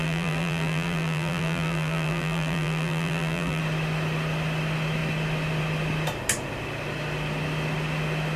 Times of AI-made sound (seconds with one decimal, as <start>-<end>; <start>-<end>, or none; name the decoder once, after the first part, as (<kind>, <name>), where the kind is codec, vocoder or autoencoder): 0.0-3.6 (vocoder, BigVGAN v2)